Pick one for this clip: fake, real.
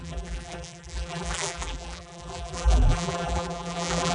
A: fake